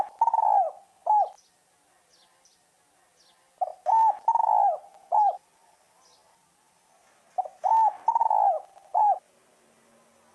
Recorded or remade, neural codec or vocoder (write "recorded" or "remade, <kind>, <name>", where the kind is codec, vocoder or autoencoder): recorded